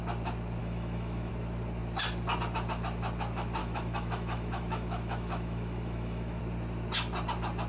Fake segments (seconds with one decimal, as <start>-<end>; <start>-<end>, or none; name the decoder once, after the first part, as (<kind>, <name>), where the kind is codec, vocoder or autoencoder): 0.6-1.3 (autoencoder, DAC-VAE); 3.6-6.4